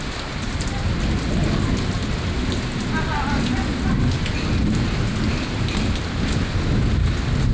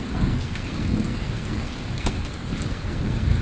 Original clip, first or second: first